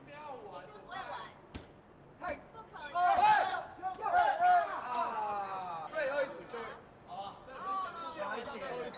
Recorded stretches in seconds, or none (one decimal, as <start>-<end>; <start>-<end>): 0.0-7.7; 8.6-9.0